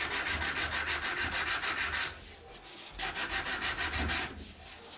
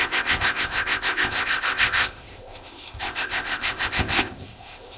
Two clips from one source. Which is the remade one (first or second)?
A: second